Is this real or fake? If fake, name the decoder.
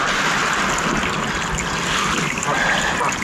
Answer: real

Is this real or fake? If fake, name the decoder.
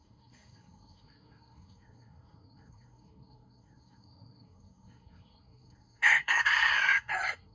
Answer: fake, codec, SNAC